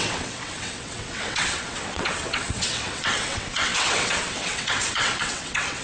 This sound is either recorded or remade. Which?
remade